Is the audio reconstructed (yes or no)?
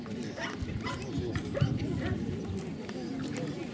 yes